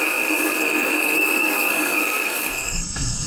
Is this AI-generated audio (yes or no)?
yes